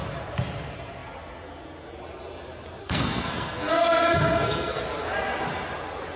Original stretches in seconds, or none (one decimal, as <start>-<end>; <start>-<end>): 0.0-2.8; 4.8-6.2